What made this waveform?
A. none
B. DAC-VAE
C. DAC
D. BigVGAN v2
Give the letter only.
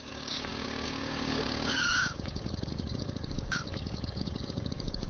C